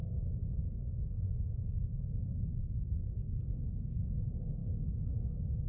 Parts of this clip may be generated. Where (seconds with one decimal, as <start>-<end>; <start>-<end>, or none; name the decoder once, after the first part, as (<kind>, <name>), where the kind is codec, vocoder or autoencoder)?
0.0-2.2 (codec, DAC); 2.6-4.0